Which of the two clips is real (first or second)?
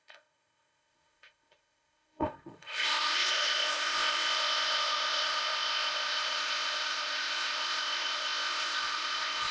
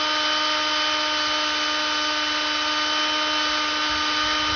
second